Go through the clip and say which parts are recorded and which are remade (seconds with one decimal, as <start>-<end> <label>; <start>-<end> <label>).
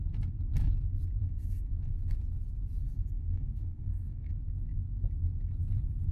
0.0-1.2 recorded; 1.2-1.7 remade; 1.7-2.8 recorded; 2.8-4.3 remade; 4.3-6.1 recorded